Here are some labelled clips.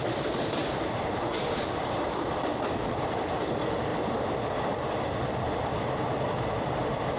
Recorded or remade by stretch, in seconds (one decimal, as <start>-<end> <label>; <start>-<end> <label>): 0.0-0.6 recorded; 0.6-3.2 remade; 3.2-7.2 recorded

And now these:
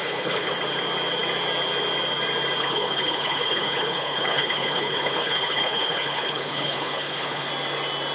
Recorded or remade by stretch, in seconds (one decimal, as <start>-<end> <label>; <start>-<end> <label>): 0.0-0.5 remade; 0.5-2.6 recorded; 2.6-7.5 remade; 7.5-8.1 recorded

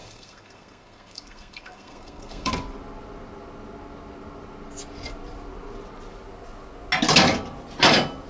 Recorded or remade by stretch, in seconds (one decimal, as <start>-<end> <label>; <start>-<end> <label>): 0.0-2.5 remade; 2.5-8.3 recorded

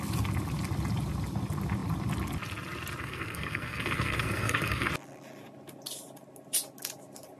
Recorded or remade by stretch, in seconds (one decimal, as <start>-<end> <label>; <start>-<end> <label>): 0.0-3.0 recorded; 3.0-4.9 remade; 4.9-7.4 recorded